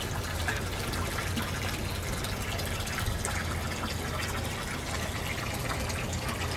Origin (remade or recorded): recorded